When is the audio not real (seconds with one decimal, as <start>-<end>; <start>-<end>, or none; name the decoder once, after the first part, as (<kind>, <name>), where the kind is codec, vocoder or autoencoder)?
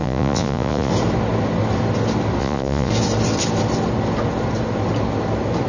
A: 0.0-0.9 (vocoder, Vocos); 2.4-2.9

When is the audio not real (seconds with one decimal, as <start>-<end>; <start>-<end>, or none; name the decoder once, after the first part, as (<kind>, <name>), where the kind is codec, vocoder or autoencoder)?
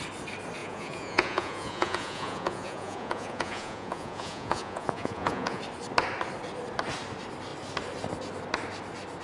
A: 0.6-5.6 (vocoder, Vocos)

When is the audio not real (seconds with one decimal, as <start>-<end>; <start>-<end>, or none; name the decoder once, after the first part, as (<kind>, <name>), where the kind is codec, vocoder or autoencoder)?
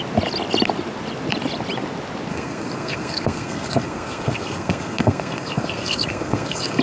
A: 2.3-6.8 (codec, SNAC)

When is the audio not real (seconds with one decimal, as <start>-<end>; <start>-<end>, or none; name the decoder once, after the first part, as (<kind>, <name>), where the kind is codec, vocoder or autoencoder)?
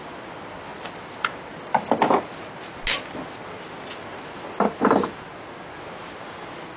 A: none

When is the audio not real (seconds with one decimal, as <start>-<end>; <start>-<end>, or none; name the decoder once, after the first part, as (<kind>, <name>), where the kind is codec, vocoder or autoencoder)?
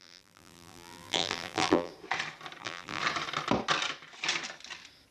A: 0.0-1.9 (vocoder, BigVGAN v2); 2.6-3.0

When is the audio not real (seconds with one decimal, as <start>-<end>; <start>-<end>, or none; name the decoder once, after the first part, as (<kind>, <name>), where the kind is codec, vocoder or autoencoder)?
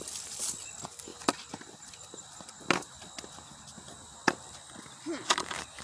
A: none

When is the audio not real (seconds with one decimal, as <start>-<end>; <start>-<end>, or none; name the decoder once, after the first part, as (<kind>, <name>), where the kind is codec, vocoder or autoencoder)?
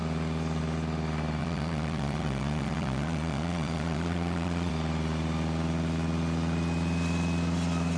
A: 1.4-4.7 (vocoder, Vocos)